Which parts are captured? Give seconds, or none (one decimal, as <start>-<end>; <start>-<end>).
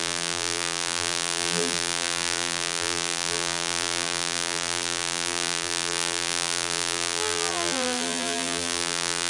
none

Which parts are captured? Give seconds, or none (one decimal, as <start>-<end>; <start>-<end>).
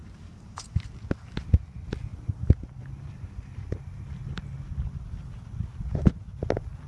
0.8-2.1; 4.2-6.9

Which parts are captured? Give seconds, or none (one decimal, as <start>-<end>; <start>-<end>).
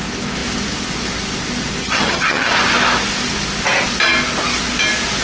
0.0-1.8; 2.5-5.2